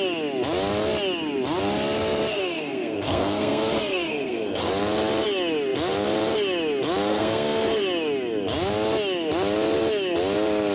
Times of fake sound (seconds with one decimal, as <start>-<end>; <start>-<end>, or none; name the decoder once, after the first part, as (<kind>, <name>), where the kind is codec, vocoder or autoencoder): 2.3-4.7 (codec, SNAC); 7.1-7.8